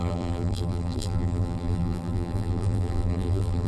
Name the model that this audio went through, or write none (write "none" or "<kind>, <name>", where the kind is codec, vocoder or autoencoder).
vocoder, BigVGAN v2